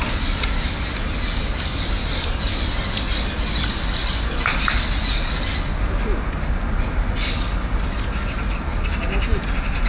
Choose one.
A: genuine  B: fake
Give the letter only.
A